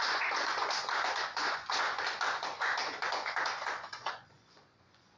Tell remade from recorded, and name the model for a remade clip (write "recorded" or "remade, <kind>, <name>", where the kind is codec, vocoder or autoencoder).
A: remade, vocoder, Vocos